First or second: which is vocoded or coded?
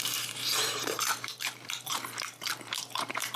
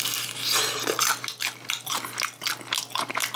first